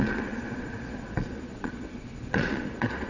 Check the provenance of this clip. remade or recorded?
remade